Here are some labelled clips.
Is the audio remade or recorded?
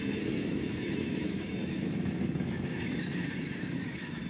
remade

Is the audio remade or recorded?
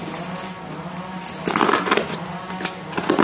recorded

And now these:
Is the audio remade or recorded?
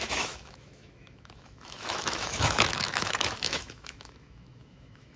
remade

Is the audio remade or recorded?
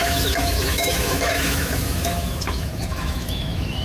remade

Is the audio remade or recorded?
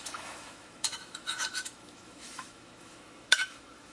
remade